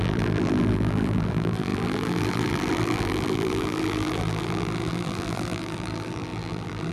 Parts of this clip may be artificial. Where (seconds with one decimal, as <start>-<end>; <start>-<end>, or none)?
0.0-6.9

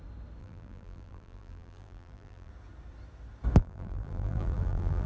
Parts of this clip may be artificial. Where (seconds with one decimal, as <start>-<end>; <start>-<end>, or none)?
0.4-2.5; 3.6-5.1